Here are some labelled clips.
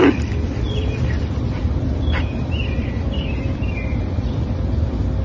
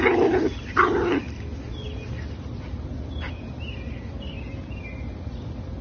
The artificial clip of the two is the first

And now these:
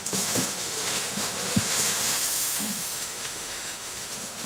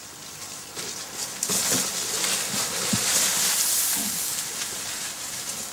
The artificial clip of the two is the first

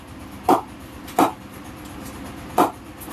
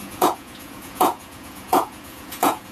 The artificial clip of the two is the second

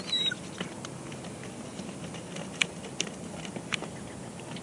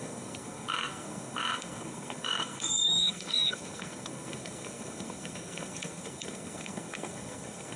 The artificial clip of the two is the second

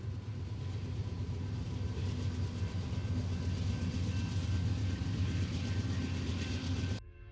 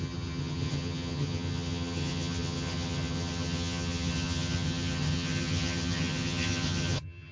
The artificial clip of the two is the second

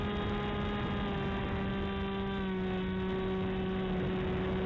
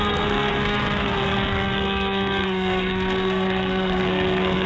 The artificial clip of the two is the second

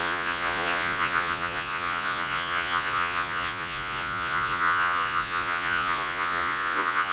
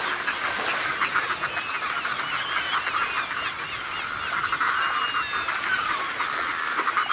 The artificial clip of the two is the first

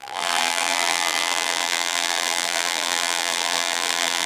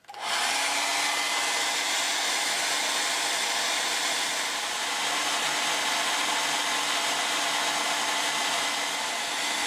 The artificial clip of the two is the first